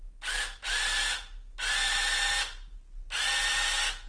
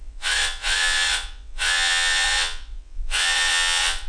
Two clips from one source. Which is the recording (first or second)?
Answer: first